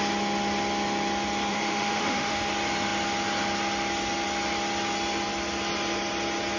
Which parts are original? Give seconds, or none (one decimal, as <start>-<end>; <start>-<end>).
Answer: 0.0-1.5; 2.5-6.6